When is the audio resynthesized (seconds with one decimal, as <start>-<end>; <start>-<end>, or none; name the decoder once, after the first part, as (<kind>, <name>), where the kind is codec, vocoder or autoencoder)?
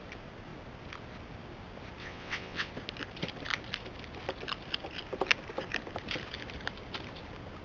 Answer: 2.0-2.7 (vocoder, WaveNeXt)